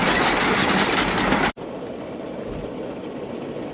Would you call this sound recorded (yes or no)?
yes